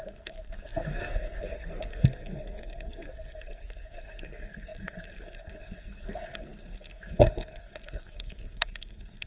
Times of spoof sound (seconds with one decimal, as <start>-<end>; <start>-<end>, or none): 0.0-9.3